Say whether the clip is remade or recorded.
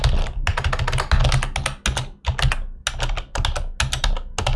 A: recorded